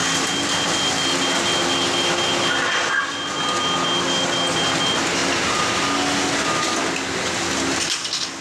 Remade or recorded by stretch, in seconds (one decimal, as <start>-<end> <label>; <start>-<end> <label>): 0.0-8.4 recorded